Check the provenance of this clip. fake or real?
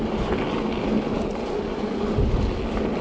real